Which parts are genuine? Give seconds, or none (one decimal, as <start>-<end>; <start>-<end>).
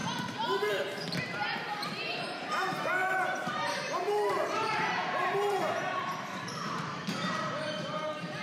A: 0.0-1.2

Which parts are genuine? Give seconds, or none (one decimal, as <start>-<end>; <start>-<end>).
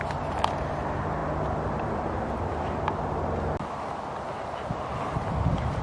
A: 0.0-5.8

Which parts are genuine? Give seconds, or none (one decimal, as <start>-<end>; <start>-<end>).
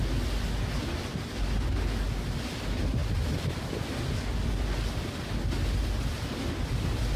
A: 0.0-7.2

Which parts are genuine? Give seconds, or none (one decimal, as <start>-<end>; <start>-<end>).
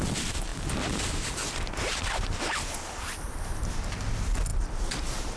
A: 0.5-2.6; 3.5-4.1